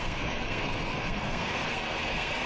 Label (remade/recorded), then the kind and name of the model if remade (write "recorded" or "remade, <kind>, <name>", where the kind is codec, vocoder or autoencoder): remade, codec, SNAC